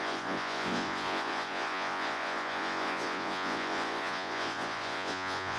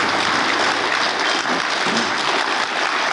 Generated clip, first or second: first